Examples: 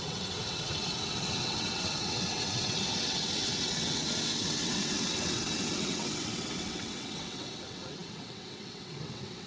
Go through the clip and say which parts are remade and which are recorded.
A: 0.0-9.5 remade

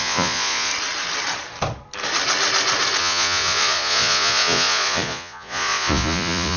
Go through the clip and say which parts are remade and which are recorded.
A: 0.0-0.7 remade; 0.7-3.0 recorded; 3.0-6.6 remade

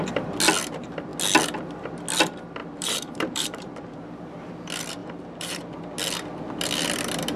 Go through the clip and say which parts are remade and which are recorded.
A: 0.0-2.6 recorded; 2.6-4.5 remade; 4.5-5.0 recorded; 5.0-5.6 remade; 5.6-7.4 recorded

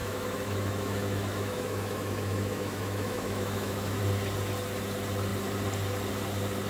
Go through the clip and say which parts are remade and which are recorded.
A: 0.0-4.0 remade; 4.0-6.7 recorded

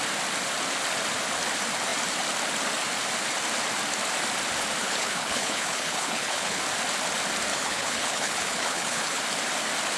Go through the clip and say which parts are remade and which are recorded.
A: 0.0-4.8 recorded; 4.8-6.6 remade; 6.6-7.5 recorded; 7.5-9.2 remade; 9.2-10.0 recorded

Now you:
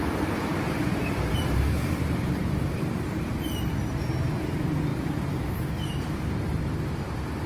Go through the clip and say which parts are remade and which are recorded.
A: 0.0-3.4 remade; 3.4-4.9 recorded; 4.9-6.3 remade; 6.3-7.5 recorded